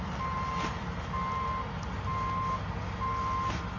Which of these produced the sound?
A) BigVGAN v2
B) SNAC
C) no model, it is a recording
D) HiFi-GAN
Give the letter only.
C